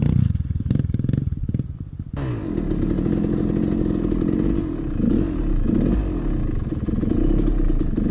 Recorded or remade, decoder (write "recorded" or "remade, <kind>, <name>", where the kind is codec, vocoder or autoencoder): recorded